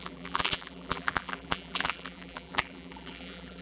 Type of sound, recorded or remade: remade